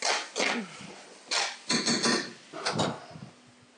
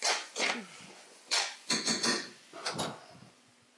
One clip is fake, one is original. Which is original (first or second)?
first